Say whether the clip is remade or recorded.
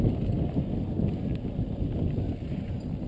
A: recorded